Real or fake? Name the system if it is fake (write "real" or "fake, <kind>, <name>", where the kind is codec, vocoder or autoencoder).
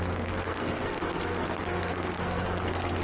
fake, codec, SNAC